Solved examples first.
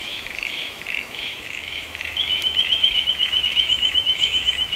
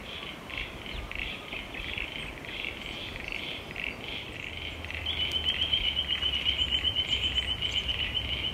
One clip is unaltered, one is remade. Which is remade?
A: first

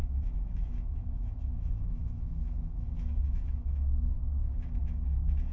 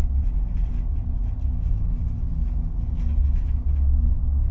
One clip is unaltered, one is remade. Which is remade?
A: first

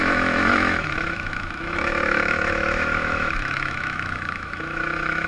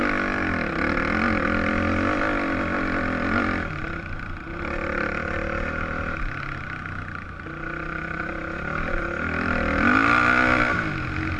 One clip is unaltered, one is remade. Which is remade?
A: first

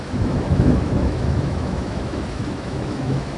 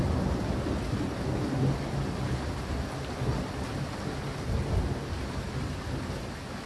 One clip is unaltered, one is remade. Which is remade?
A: first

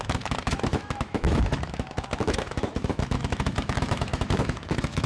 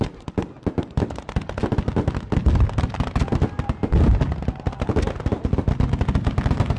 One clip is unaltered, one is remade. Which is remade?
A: first